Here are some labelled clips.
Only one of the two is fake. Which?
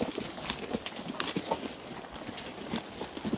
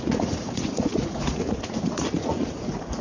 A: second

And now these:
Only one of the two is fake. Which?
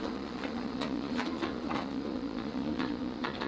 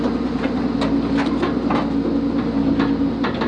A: first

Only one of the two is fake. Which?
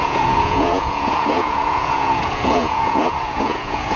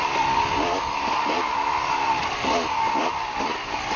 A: first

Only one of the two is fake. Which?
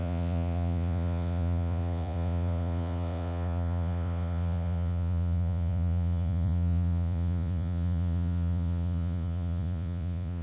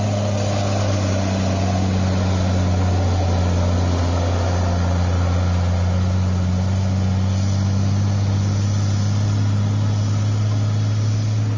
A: first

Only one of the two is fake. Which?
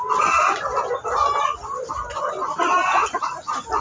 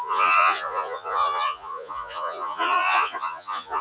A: second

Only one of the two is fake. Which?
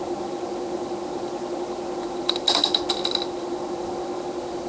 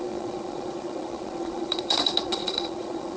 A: second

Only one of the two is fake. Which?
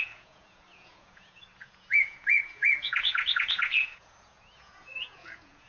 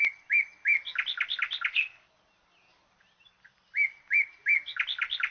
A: first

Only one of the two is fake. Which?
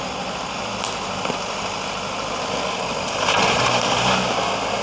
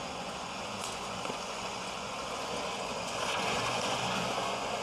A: second